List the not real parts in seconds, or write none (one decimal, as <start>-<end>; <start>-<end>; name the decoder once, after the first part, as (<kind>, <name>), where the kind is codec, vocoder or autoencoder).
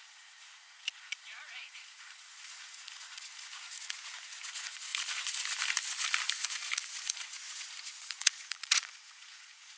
0.0-4.9 (vocoder, Vocos); 6.5-9.8